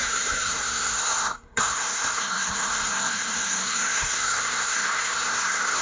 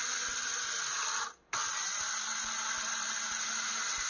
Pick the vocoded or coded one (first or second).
first